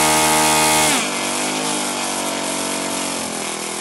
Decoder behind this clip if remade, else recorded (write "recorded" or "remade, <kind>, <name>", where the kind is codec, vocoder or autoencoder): recorded